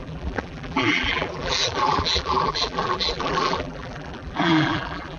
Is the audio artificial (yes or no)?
yes